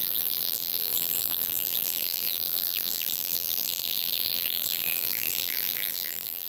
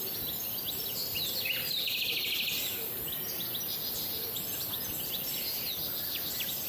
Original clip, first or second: second